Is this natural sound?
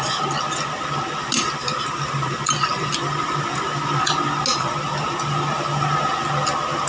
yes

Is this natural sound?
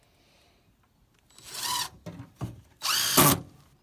yes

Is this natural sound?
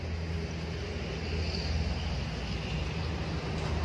yes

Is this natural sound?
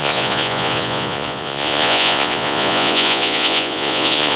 no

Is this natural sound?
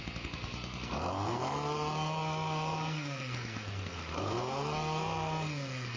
no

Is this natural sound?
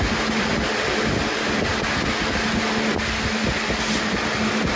yes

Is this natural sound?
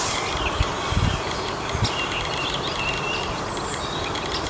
yes